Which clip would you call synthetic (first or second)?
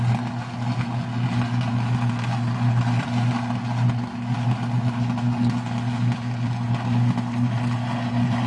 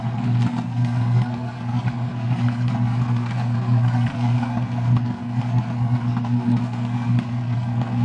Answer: second